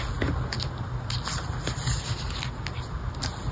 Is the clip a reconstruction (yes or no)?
no